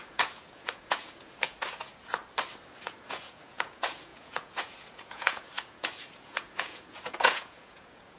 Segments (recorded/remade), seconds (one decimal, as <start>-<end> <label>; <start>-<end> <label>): 0.0-2.2 remade; 2.2-2.7 recorded; 2.7-8.2 remade